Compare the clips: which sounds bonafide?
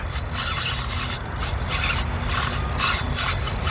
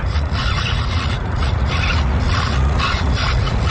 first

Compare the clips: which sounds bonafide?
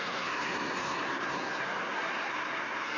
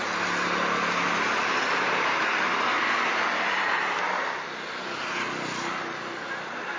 second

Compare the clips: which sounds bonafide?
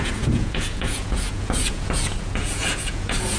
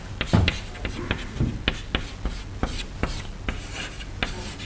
second